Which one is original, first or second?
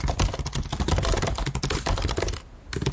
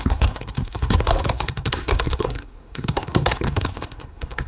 first